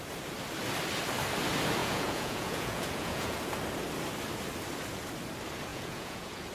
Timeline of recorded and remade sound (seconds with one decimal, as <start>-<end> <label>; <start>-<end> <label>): 0.0-1.8 recorded; 1.8-3.4 remade; 3.4-5.7 recorded; 5.7-6.5 remade